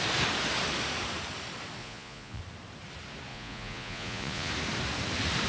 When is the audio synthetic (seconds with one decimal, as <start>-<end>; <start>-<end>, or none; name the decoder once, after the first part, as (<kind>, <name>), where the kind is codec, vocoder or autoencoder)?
1.8-2.4 (vocoder, Vocos); 3.3-4.5